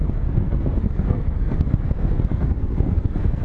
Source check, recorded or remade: remade